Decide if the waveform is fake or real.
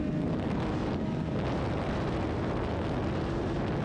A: real